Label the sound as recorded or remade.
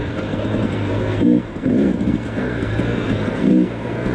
remade